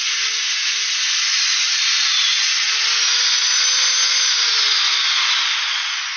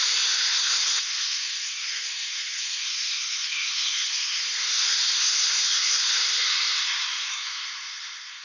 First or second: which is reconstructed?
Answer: second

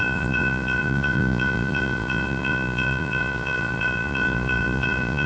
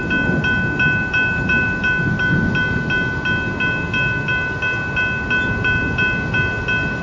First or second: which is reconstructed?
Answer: first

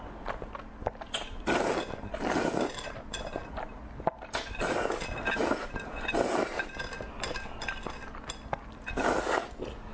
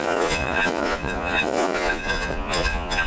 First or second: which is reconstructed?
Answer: second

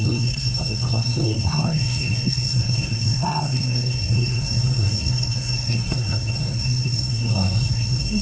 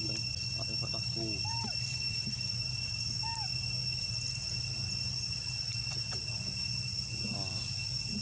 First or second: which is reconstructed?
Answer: first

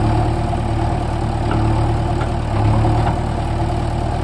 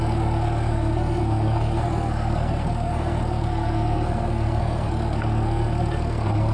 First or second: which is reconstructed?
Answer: second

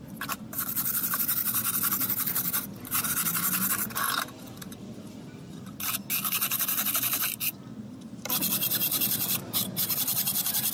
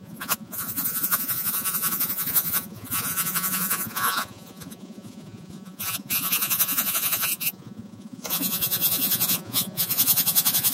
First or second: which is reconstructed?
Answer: second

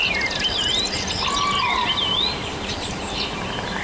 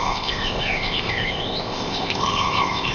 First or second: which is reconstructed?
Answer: second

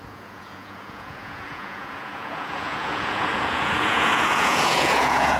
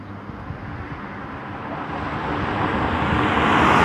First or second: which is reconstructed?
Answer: first